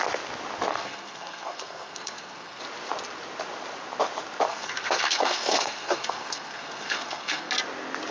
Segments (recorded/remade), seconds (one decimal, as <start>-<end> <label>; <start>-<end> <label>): 0.0-0.7 recorded; 0.7-2.6 remade; 2.6-4.5 recorded; 4.5-7.5 remade; 7.5-8.1 recorded

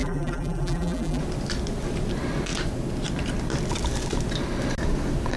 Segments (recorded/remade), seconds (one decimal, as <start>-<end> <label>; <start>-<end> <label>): 0.0-1.2 remade; 1.2-5.4 recorded

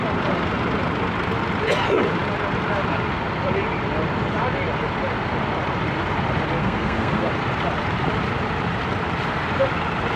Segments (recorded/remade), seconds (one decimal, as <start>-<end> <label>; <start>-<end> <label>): 0.0-6.6 recorded; 6.6-7.3 remade; 7.3-10.2 recorded

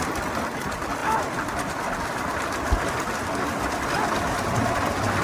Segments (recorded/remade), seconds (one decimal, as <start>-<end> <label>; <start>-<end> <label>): 0.0-5.2 recorded